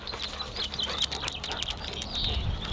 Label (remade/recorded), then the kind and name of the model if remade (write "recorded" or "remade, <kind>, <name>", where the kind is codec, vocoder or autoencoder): recorded